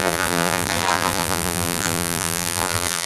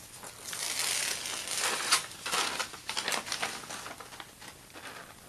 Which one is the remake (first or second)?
first